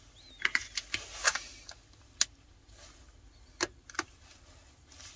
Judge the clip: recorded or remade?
recorded